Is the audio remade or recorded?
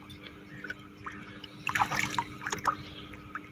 recorded